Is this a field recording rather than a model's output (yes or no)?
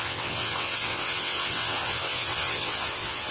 no